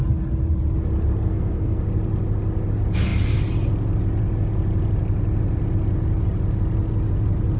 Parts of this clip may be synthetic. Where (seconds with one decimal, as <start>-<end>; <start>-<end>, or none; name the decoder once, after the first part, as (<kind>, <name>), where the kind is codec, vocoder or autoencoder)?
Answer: 1.3-1.8 (codec, SNAC)